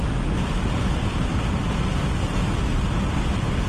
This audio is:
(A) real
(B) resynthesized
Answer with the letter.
B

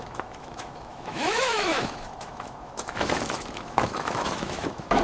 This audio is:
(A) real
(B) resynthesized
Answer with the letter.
B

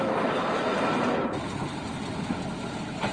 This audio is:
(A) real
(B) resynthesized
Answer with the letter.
A